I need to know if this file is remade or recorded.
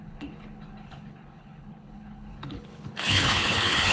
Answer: remade